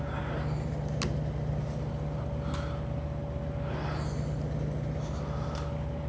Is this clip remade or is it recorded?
recorded